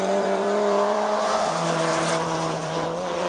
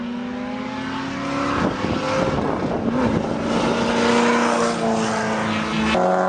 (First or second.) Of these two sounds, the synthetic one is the first